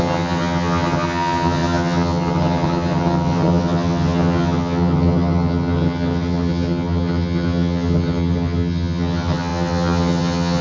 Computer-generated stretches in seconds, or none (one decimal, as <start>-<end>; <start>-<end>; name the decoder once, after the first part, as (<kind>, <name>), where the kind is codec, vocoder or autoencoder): 0.0-10.6 (vocoder, HiFi-GAN)